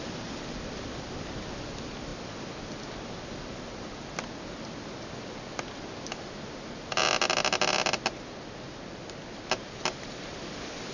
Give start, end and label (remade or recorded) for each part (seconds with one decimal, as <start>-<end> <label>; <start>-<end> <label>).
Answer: 0.0-10.9 recorded